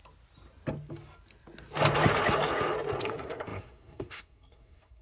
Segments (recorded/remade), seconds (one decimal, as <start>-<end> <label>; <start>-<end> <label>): 0.0-3.0 recorded; 3.0-5.0 remade